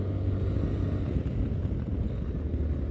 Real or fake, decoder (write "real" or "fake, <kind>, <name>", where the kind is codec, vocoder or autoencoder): real